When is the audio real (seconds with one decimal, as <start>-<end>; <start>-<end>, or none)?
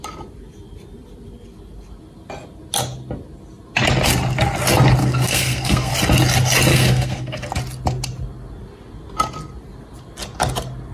0.0-5.0; 5.9-6.7; 7.4-10.9